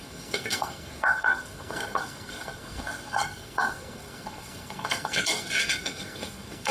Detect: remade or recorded remade